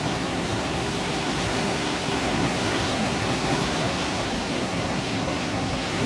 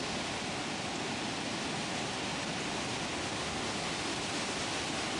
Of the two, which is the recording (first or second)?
second